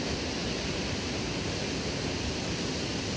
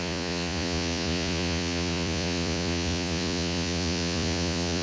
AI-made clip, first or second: second